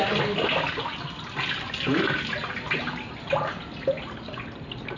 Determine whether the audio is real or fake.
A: real